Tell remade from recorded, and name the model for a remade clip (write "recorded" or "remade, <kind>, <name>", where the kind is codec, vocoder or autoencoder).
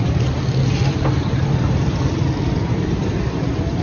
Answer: remade, vocoder, BigVGAN v2